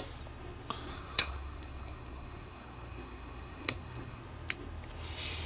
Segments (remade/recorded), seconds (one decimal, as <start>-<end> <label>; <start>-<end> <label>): 0.0-0.9 recorded; 0.9-4.2 remade; 4.2-5.5 recorded